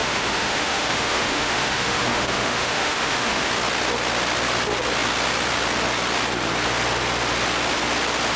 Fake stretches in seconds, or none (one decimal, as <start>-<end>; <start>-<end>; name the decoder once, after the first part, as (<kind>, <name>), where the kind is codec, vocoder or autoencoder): 0.0-3.5 (autoencoder, DAC-VAE)